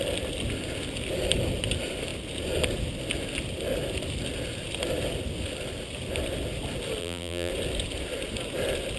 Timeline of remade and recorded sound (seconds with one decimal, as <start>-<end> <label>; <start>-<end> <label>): 0.0-7.0 recorded; 7.0-7.5 remade; 7.5-9.0 recorded